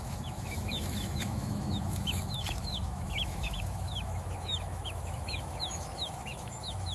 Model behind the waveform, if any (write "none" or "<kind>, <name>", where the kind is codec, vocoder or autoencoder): autoencoder, DAC-VAE